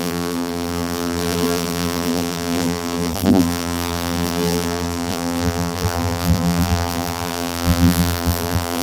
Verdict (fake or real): fake